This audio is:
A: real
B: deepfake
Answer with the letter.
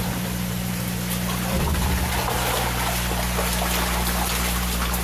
A